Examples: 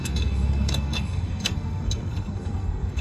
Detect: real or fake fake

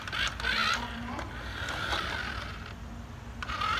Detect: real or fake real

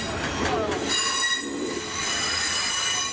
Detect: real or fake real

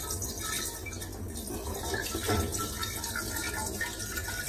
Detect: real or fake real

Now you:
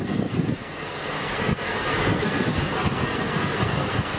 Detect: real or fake fake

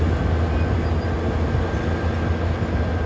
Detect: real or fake real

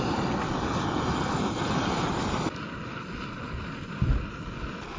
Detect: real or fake real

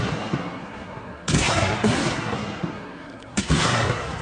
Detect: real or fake fake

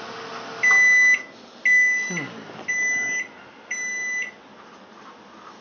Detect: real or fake real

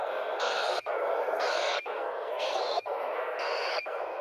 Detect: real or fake fake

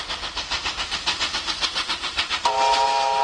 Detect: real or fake real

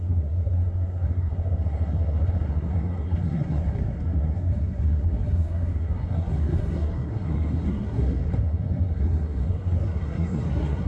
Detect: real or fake fake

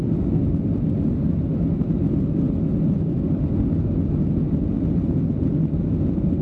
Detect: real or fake real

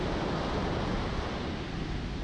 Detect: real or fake real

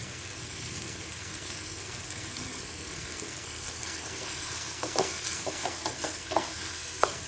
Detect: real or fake fake